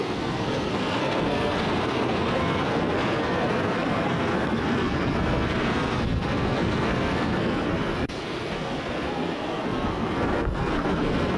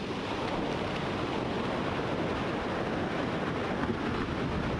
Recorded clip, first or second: second